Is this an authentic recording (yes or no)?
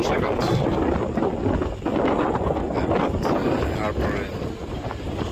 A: yes